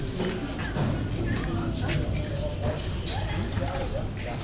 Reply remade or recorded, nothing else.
recorded